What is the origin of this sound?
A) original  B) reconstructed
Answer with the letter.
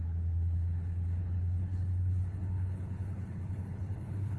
B